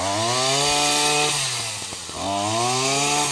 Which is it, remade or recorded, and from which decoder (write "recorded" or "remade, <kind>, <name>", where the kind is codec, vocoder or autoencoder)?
recorded